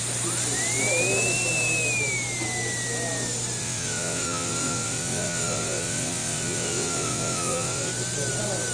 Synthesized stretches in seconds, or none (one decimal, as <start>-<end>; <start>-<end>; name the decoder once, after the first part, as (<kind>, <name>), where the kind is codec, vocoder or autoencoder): 3.6-7.9 (vocoder, WaveNeXt)